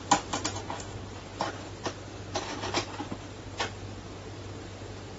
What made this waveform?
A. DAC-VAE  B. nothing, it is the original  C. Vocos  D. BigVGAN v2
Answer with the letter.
B